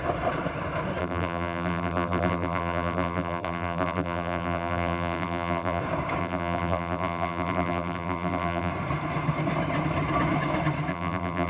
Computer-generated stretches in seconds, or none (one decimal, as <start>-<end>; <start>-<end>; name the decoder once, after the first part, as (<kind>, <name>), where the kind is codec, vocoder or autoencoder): 1.0-5.8 (vocoder, BigVGAN v2); 6.2-8.7; 10.9-11.5